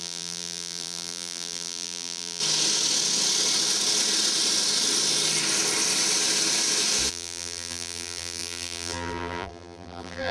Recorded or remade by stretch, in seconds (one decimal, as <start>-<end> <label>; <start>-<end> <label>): 0.0-2.4 remade; 2.4-7.1 recorded; 7.1-10.3 remade